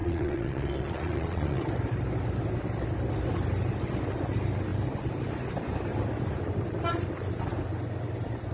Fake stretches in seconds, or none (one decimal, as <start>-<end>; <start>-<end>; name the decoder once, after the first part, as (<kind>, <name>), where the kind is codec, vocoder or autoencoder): 0.0-1.6 (vocoder, Vocos)